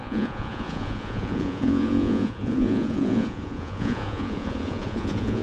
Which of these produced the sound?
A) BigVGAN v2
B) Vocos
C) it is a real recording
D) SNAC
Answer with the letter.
B